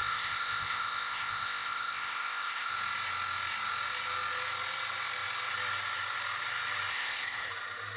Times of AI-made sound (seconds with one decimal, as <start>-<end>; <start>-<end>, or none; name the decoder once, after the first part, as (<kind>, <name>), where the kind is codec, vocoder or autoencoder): 0.0-2.7 (codec, ZipCodec); 6.9-7.5